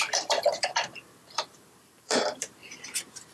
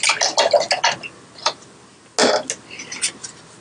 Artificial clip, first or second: first